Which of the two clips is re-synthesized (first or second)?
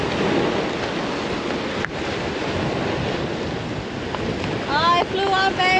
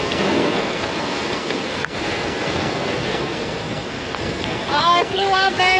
second